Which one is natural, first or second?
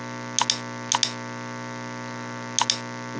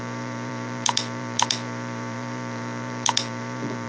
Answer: first